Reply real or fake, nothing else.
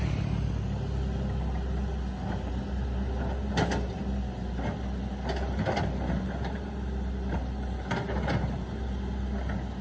real